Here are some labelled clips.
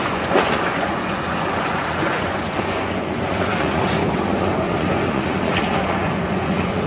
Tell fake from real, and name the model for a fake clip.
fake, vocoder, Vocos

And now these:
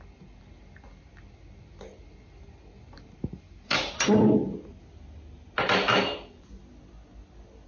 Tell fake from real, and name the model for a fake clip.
real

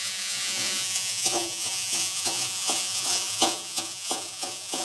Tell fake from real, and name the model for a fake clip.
fake, vocoder, Vocos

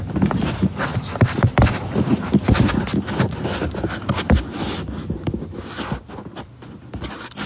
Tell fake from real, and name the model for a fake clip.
real